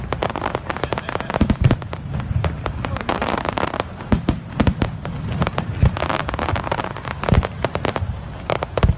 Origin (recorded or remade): remade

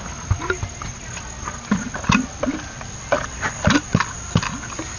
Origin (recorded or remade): recorded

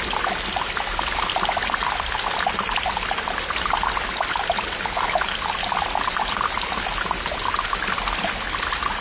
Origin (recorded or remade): recorded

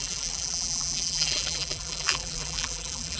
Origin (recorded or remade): remade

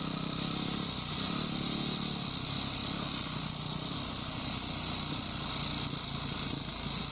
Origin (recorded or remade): recorded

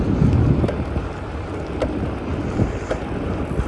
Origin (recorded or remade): remade